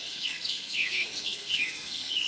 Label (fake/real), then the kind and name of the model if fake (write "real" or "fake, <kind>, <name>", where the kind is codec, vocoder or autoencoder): fake, codec, SNAC